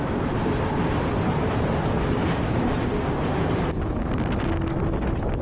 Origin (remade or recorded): recorded